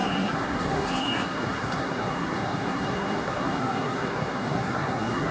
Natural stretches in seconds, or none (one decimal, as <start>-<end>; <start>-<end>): none